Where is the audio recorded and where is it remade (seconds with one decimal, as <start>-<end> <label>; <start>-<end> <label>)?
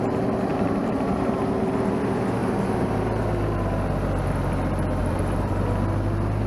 0.0-0.5 recorded; 0.5-1.4 remade; 1.4-2.4 recorded; 2.4-3.0 remade; 3.0-5.0 recorded; 5.0-5.5 remade; 5.5-6.5 recorded